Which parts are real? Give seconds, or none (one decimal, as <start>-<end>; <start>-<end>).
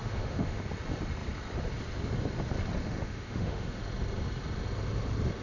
0.6-2.8; 3.8-5.4